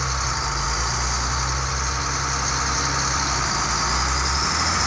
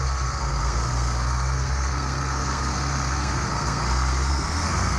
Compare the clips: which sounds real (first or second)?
first